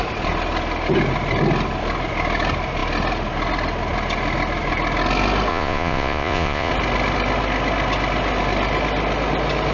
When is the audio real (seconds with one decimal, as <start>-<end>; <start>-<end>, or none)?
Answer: 0.0-5.5; 6.7-9.7